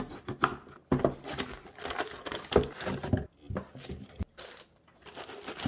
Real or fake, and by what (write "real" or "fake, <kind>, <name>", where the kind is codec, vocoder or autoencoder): real